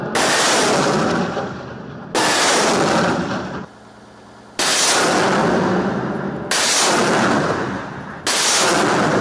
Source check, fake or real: real